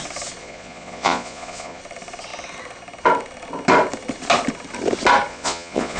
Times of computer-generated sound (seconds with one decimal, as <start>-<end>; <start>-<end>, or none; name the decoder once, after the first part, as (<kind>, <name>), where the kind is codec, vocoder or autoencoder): 0.4-1.8 (vocoder, Vocos); 5.3-6.0